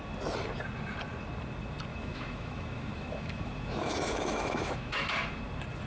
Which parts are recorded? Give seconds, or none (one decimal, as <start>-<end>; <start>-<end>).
0.0-1.9; 5.4-5.9